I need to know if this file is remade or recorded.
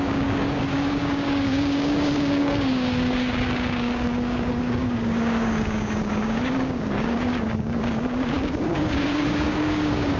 remade